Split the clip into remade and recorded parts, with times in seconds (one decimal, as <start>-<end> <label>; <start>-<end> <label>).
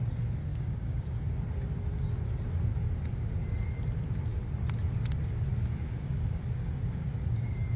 0.0-0.5 recorded; 0.5-1.2 remade; 1.2-5.5 recorded; 5.5-7.8 remade